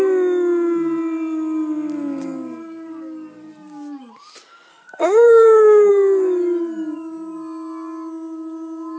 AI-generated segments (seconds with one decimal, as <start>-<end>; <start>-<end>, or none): 4.7-5.9